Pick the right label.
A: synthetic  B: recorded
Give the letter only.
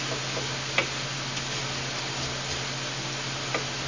B